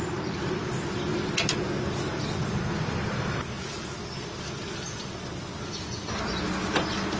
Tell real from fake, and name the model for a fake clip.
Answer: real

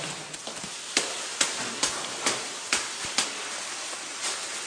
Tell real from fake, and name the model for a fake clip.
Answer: real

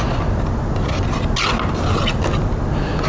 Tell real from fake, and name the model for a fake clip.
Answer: real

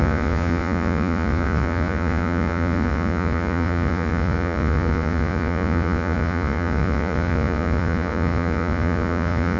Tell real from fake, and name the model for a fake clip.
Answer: fake, vocoder, Vocos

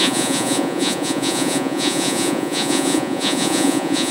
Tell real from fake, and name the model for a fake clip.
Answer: fake, vocoder, Vocos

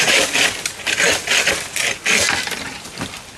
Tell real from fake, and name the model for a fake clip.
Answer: real